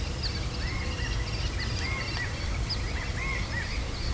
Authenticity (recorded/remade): recorded